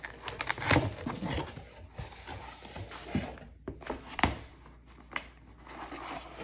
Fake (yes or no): no